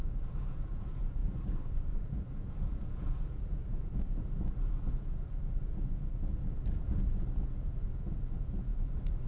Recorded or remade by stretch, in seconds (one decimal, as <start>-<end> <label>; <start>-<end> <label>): 0.0-1.2 remade; 1.2-2.0 recorded; 2.0-9.3 remade